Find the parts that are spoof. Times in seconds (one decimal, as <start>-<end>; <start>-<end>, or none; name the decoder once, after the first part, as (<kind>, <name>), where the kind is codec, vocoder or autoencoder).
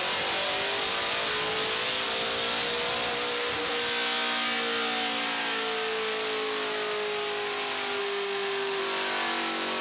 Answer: 8.0-8.8 (autoencoder, DAC-VAE)